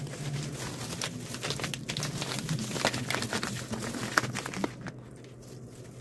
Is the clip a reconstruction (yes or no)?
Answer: no